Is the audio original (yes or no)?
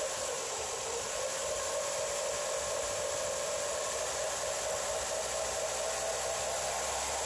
yes